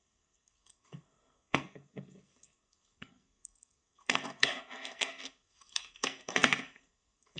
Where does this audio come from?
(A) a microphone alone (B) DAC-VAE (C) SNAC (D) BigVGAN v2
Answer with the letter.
C